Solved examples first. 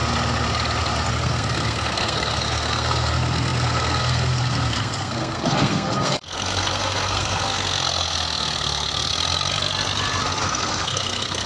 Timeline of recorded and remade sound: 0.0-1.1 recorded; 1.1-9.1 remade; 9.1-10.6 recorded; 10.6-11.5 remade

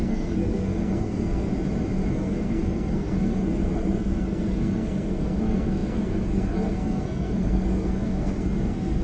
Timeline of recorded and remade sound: 0.0-1.5 remade; 1.5-2.1 recorded; 2.1-9.0 remade

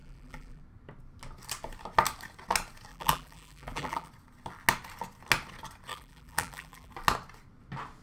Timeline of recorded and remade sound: 0.0-0.6 remade; 0.6-2.9 recorded; 2.9-4.1 remade; 4.1-5.9 recorded; 5.9-6.9 remade; 6.9-8.0 recorded

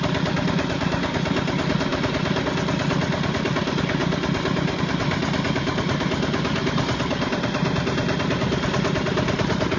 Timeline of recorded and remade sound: 0.0-9.8 recorded

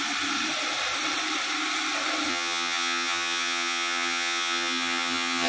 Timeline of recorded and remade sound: 0.0-2.3 recorded; 2.3-5.5 remade

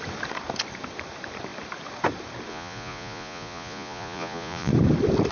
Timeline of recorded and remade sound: 0.0-2.5 recorded; 2.5-4.7 remade; 4.7-5.3 recorded

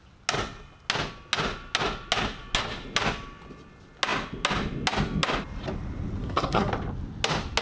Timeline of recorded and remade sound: 0.0-6.2 recorded; 6.2-6.7 remade; 6.7-7.6 recorded

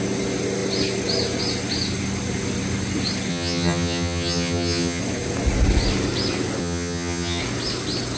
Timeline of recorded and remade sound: 0.0-3.3 recorded; 3.3-5.0 remade; 5.0-6.6 recorded; 6.6-7.4 remade; 7.4-8.2 recorded